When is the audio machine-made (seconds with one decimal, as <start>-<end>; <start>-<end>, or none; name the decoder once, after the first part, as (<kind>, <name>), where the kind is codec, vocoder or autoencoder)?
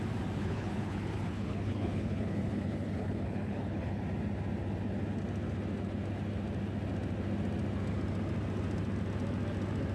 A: 0.4-4.0 (codec, HILCodec)